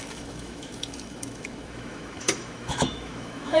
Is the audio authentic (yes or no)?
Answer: no